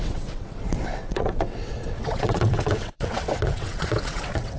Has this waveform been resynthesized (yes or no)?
yes